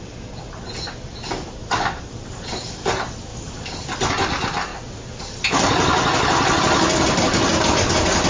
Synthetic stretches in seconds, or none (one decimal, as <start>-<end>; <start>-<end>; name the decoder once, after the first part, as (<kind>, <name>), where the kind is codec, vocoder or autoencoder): 1.6-2.9 (vocoder, BigVGAN v2); 3.3-4.1